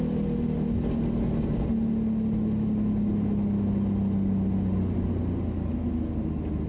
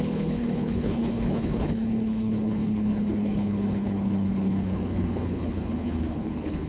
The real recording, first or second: first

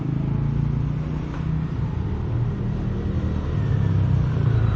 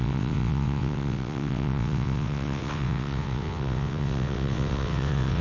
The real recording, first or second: first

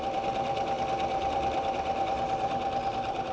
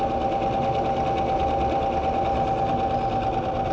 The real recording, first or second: second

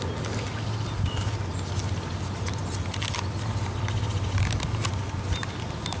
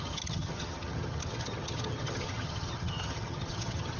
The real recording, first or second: first